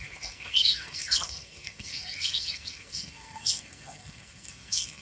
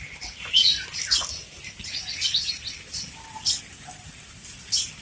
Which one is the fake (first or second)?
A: first